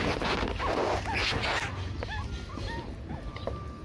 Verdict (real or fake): real